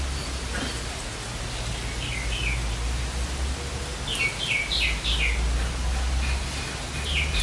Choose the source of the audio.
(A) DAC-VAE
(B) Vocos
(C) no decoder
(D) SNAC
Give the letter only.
C